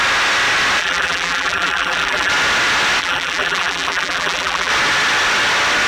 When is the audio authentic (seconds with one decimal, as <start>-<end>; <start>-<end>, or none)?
0.0-0.8; 2.3-3.0; 4.7-5.9